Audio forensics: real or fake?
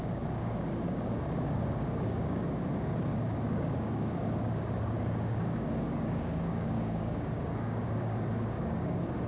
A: fake